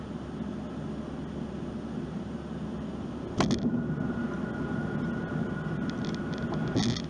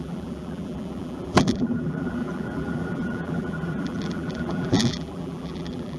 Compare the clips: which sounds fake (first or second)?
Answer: second